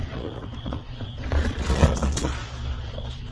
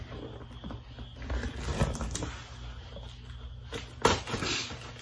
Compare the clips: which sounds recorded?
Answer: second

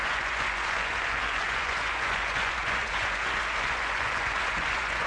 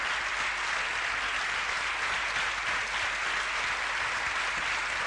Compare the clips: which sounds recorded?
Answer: second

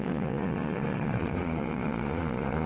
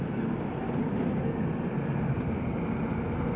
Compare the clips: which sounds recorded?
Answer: second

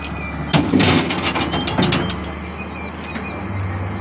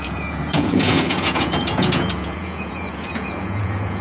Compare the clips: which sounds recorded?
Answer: first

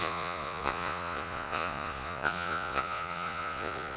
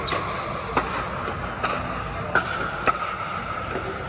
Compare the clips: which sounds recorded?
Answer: second